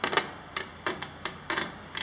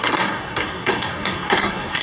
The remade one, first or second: second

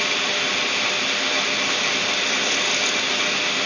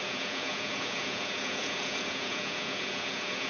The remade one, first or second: second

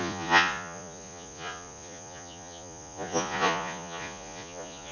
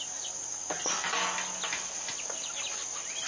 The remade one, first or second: first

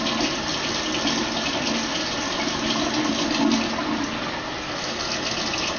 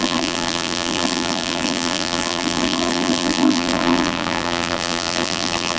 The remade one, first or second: second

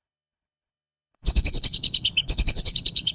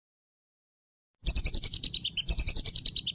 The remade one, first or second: first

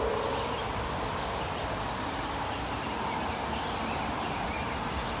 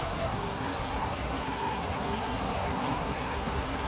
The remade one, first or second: second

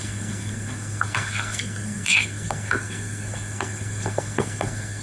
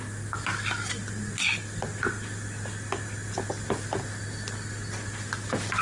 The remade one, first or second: first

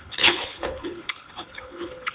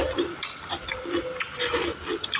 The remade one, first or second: first